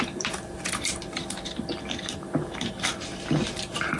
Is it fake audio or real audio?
fake